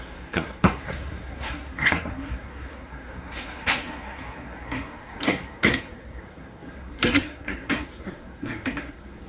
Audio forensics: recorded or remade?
remade